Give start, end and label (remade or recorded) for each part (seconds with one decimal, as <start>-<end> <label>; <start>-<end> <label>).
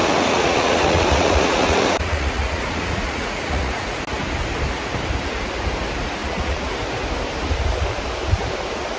0.0-4.0 remade; 4.0-6.2 recorded; 6.2-6.8 remade; 6.8-9.0 recorded